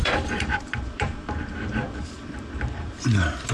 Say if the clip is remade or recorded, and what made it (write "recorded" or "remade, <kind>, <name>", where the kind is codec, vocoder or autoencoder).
remade, vocoder, BigVGAN v2